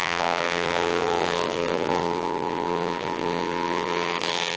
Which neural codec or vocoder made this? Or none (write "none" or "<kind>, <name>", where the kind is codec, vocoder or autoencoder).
vocoder, BigVGAN v2